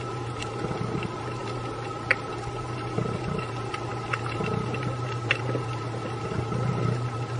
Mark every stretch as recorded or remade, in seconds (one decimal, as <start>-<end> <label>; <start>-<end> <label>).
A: 0.0-7.4 recorded